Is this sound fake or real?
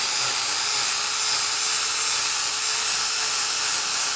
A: real